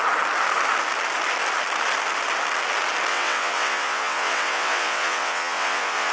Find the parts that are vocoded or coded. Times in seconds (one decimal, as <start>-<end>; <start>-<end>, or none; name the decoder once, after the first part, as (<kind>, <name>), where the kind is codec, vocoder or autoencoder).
3.1-6.1 (vocoder, WaveNeXt)